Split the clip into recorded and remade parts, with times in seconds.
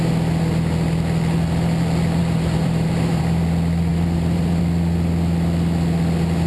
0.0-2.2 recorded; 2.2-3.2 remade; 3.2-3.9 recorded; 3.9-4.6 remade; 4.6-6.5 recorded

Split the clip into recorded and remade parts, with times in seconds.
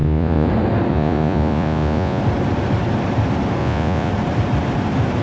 0.0-0.5 remade; 0.5-0.9 recorded; 0.9-2.2 remade; 2.2-3.6 recorded; 3.6-4.1 remade; 4.1-5.2 recorded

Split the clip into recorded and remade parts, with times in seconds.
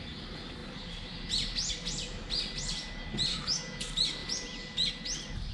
0.0-3.3 recorded; 3.3-3.8 remade; 3.8-5.5 recorded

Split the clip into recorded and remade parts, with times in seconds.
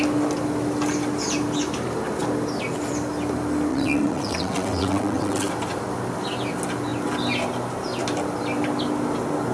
0.0-3.7 recorded; 3.7-5.5 remade; 5.5-9.5 recorded